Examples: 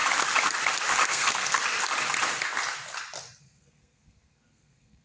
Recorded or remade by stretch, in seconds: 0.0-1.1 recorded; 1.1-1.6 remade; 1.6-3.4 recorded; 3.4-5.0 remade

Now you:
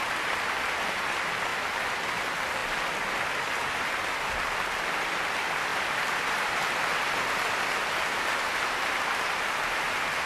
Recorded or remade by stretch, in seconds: 0.0-10.3 recorded

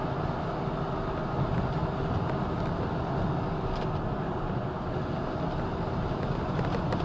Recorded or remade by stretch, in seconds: 0.0-7.0 recorded

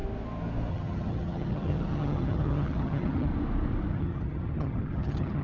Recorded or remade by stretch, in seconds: 0.0-0.7 recorded; 0.7-3.3 remade; 3.3-3.9 recorded; 3.9-5.4 remade

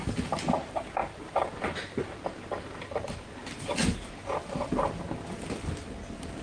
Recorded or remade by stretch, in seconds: 0.0-6.4 recorded

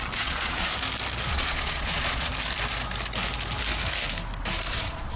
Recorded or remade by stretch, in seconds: 0.0-0.7 remade; 0.7-1.3 recorded; 1.3-2.3 remade; 2.3-4.7 recorded; 4.7-5.2 remade